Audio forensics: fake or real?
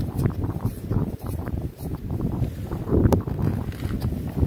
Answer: fake